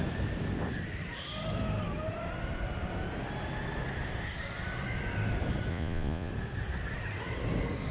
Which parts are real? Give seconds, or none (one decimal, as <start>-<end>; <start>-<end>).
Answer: 0.0-5.7; 6.3-7.9